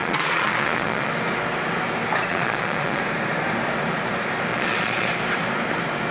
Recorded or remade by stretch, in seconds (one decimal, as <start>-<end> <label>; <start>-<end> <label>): 0.0-1.1 remade; 1.1-2.3 recorded; 2.3-3.0 remade; 3.0-4.5 recorded; 4.5-5.1 remade; 5.1-6.1 recorded